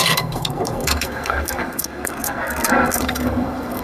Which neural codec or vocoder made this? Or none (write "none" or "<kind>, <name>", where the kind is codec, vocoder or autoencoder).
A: codec, SNAC